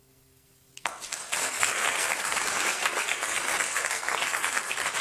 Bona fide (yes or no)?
no